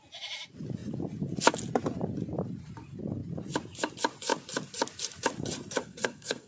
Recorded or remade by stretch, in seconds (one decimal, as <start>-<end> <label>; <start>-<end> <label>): 0.0-5.8 recorded; 5.8-6.5 remade